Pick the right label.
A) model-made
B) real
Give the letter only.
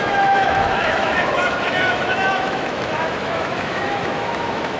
A